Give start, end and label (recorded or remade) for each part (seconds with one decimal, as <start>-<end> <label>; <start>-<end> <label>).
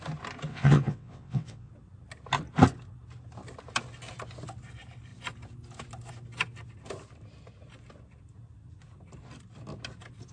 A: 0.0-0.5 recorded; 0.5-1.7 remade; 1.7-10.3 recorded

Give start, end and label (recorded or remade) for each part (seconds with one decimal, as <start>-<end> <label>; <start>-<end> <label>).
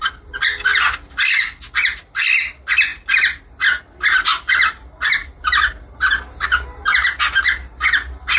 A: 0.0-8.4 recorded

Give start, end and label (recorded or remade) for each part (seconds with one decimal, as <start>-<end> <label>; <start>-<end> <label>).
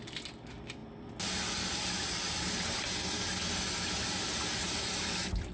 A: 0.0-5.5 recorded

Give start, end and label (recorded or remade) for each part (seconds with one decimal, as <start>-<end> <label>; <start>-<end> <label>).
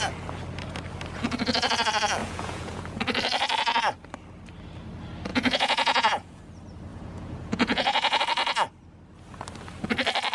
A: 0.0-2.2 recorded; 2.2-3.0 remade; 3.0-5.3 recorded; 5.3-6.4 remade; 6.4-6.9 recorded; 6.9-8.2 remade; 8.2-10.3 recorded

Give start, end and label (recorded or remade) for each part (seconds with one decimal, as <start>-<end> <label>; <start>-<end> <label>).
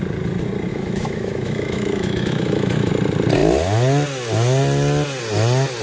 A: 0.0-0.7 recorded; 0.7-2.9 remade; 2.9-5.8 recorded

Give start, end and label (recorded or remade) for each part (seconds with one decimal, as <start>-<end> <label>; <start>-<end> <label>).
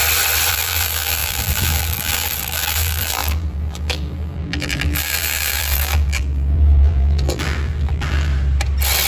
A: 0.0-0.5 recorded; 0.5-8.3 remade; 8.3-9.1 recorded